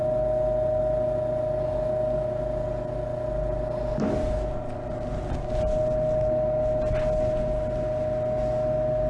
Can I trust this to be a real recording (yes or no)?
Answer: yes